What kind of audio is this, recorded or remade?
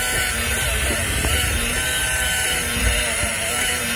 remade